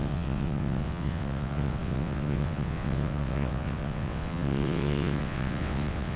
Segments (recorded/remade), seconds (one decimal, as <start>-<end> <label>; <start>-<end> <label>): 0.0-6.2 remade